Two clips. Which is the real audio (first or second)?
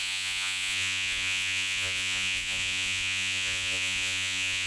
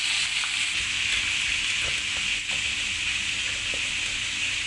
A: second